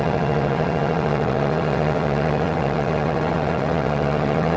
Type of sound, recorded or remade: remade